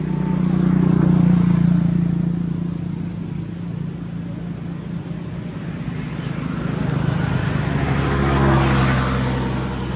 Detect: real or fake real